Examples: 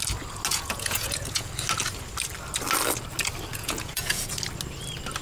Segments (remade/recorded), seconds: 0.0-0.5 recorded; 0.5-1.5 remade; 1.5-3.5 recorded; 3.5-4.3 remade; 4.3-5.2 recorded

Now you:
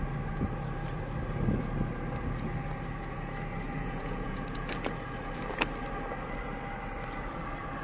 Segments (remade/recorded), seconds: 0.0-3.8 recorded; 3.8-4.4 remade; 4.4-7.8 recorded

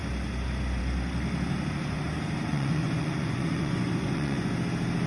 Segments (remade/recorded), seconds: 0.0-2.5 recorded; 2.5-4.5 remade; 4.5-5.1 recorded

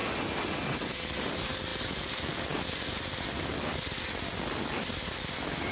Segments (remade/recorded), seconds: 0.0-5.7 recorded

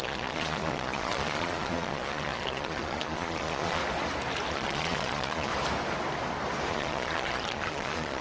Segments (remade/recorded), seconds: 0.0-3.8 remade; 3.8-4.5 recorded; 4.5-5.5 remade; 5.5-6.7 recorded; 6.7-8.2 remade